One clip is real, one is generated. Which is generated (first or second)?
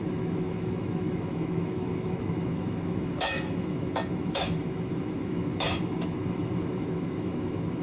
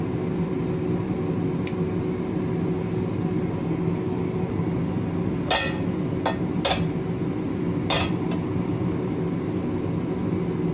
first